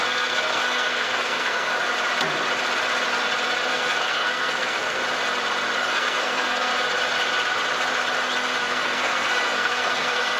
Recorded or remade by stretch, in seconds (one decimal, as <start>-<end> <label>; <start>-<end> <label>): 0.0-1.7 remade; 1.7-3.7 recorded; 3.7-5.0 remade; 5.0-5.8 recorded; 5.8-6.7 remade; 6.7-8.6 recorded; 8.6-10.4 remade